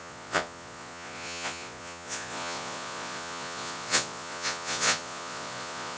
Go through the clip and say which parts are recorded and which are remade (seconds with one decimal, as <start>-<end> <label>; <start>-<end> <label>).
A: 0.0-6.0 remade

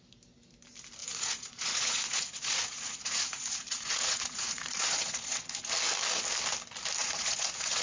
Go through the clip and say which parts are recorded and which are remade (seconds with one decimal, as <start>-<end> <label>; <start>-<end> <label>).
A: 0.0-1.0 recorded; 1.0-5.7 remade; 5.7-7.0 recorded; 7.0-7.8 remade

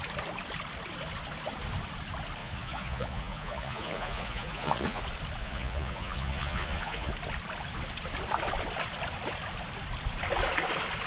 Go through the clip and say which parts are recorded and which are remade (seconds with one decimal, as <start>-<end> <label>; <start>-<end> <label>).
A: 0.0-2.4 recorded; 2.4-5.0 remade; 5.0-5.4 recorded; 5.4-7.1 remade; 7.1-11.1 recorded

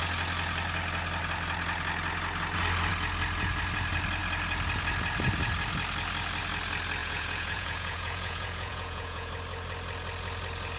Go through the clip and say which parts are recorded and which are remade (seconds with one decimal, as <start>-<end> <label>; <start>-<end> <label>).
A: 0.0-7.0 recorded; 7.0-9.3 remade; 9.3-10.8 recorded

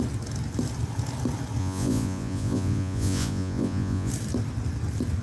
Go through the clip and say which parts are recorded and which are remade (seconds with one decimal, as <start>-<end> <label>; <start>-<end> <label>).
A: 0.0-1.6 recorded; 1.6-4.1 remade; 4.1-5.2 recorded

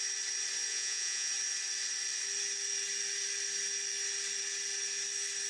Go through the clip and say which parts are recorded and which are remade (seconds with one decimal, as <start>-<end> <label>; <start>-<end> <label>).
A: 0.0-0.7 recorded; 0.7-1.3 remade; 1.3-5.5 recorded

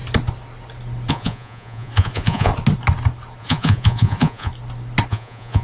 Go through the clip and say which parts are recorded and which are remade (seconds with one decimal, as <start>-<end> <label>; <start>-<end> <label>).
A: 0.0-1.1 recorded; 1.1-2.5 remade; 2.5-3.4 recorded; 3.4-4.5 remade; 4.5-5.1 recorded; 5.1-5.6 remade

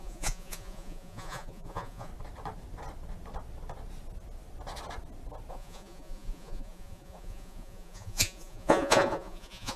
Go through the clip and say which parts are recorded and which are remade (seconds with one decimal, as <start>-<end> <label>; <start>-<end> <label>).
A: 0.0-2.1 remade; 2.1-5.5 recorded; 5.5-9.8 remade